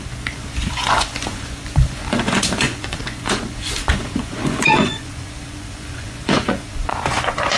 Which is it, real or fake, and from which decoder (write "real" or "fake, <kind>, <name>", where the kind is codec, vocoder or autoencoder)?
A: fake, vocoder, Vocos